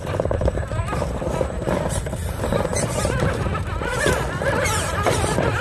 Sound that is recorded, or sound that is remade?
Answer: remade